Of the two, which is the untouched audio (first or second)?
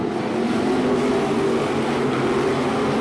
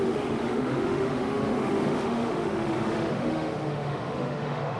first